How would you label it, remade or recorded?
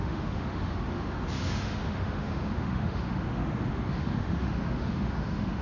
remade